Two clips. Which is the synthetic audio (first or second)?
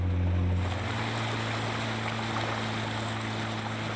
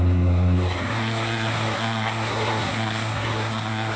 second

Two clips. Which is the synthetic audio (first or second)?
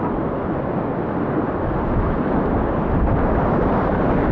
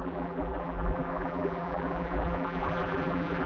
second